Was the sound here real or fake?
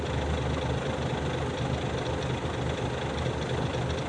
real